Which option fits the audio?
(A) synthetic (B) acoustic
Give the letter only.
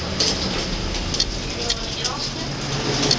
B